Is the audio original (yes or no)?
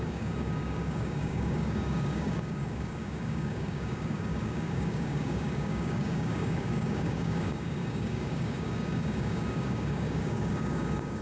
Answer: no